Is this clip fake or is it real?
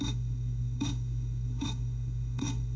fake